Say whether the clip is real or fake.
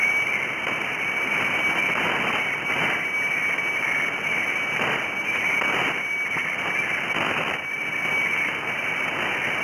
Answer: real